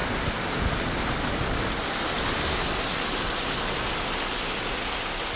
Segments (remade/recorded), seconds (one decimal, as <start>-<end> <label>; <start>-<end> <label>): 0.0-5.4 recorded